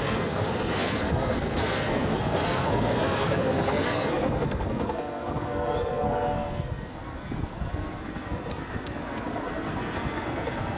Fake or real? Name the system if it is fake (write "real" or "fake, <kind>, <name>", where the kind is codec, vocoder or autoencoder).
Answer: fake, codec, SNAC